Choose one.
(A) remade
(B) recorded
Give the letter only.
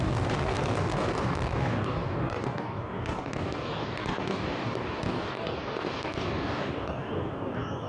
A